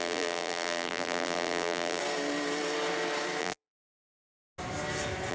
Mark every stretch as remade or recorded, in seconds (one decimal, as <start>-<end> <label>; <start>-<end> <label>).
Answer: 0.0-2.0 remade; 2.0-3.4 recorded; 3.4-4.3 remade; 4.3-5.3 recorded